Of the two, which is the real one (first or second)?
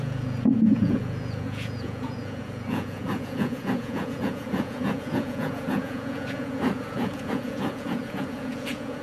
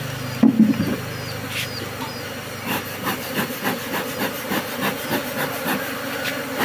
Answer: second